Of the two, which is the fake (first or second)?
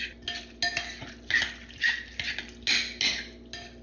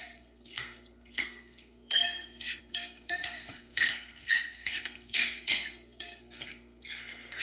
second